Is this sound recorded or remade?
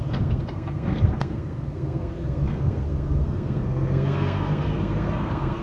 remade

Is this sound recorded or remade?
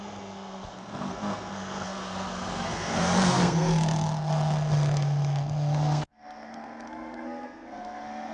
remade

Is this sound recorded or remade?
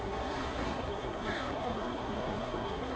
remade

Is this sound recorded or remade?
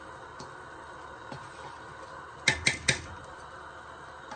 recorded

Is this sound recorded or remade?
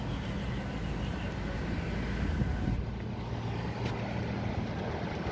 recorded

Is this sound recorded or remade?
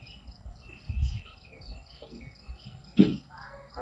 remade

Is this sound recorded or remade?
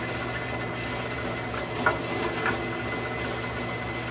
recorded